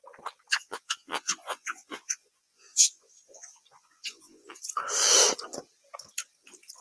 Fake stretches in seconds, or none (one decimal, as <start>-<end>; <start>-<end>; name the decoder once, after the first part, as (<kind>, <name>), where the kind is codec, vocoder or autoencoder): 0.5-4.6 (vocoder, Vocos)